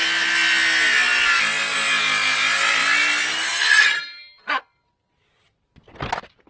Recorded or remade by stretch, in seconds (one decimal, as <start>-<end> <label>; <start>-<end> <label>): 0.0-6.5 recorded